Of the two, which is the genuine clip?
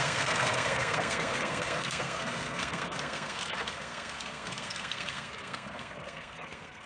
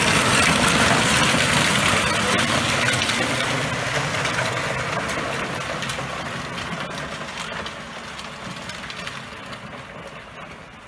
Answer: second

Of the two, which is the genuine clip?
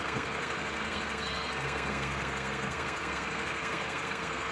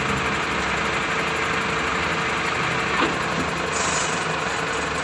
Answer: second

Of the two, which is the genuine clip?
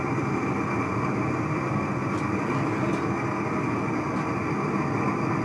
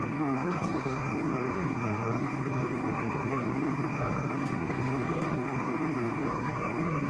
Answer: first